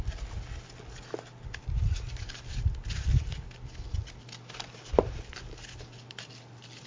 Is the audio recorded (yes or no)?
yes